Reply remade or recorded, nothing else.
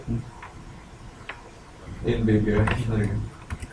recorded